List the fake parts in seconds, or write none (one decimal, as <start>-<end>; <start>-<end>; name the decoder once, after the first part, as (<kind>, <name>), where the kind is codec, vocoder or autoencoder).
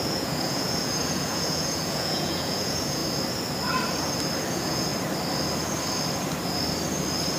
0.0-3.0 (vocoder, Vocos); 4.5-4.9